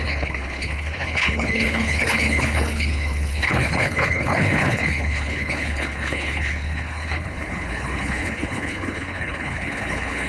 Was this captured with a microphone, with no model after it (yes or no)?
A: no